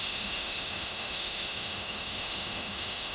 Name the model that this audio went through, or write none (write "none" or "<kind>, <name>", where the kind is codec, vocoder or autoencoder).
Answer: autoencoder, DAC-VAE